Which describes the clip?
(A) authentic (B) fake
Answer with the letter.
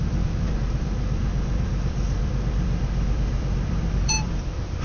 B